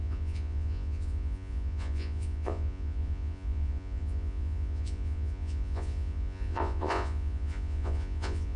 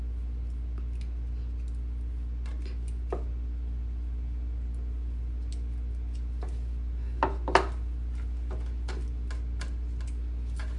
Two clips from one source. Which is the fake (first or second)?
first